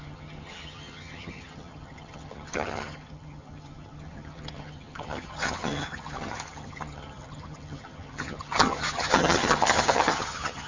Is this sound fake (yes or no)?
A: yes